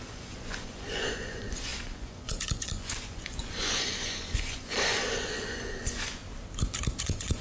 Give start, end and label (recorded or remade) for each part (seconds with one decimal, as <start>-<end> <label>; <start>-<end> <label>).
0.0-6.2 remade; 6.2-7.0 recorded; 7.0-7.4 remade

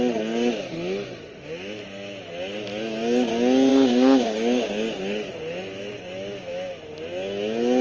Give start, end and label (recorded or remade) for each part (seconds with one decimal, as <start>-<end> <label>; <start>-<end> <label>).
0.0-3.7 recorded; 3.7-5.3 remade; 5.3-7.8 recorded

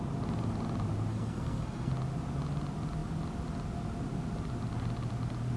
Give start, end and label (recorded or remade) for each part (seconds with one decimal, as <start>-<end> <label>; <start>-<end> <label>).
0.0-1.1 recorded; 1.1-1.9 remade; 1.9-5.6 recorded

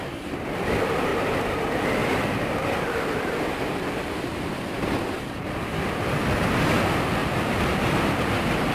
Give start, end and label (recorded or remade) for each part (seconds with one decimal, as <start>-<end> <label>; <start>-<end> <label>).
0.0-1.1 recorded; 1.1-1.6 remade; 1.6-2.0 recorded; 2.0-5.0 remade; 5.0-8.7 recorded

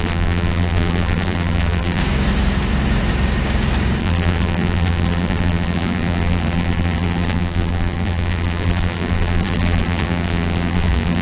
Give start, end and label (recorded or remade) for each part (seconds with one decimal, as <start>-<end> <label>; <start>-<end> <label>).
0.0-2.0 remade; 2.0-4.0 recorded; 4.0-11.2 remade